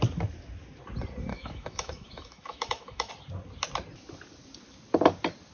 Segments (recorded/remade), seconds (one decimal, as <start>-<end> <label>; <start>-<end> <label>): 0.0-1.3 recorded; 1.3-3.1 remade; 3.1-5.5 recorded